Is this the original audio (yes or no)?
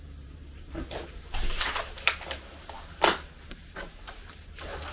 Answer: no